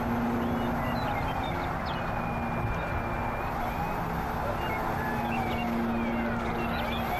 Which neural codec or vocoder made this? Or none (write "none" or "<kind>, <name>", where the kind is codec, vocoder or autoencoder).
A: none